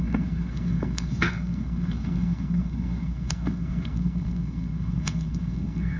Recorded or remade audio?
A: remade